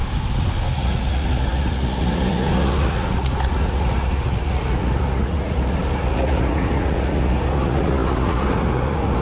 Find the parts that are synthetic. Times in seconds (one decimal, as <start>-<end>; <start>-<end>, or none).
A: 0.7-9.2